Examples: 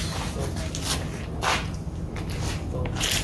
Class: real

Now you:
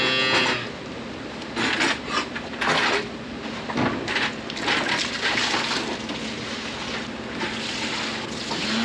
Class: real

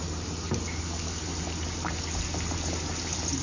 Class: real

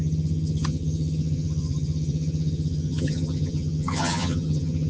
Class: fake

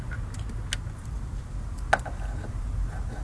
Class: real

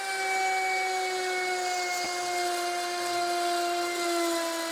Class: real